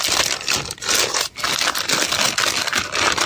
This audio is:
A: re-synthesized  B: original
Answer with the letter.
B